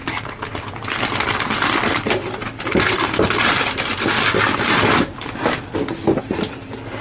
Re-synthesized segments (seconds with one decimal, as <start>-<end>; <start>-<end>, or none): 1.3-7.0